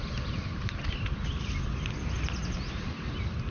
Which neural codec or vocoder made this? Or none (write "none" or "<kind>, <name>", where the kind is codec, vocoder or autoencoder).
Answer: none